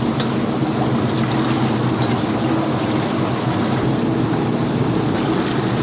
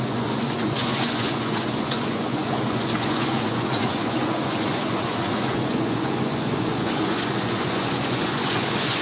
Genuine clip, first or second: first